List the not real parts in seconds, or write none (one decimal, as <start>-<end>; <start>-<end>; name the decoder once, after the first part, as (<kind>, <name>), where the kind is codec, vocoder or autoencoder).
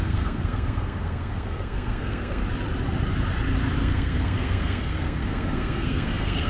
0.0-2.4 (codec, SNAC); 3.8-6.5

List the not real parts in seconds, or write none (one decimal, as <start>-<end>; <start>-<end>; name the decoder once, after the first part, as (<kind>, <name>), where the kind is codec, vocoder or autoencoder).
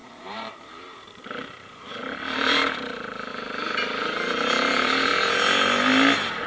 0.0-5.1 (vocoder, BigVGAN v2)